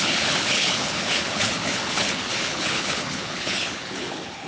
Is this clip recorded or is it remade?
remade